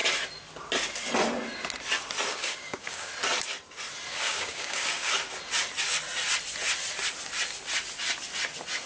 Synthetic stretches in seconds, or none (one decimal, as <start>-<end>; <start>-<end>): 2.3-3.1; 4.1-5.1